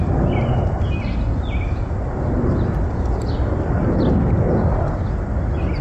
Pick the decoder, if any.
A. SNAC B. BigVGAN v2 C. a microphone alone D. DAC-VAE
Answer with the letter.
C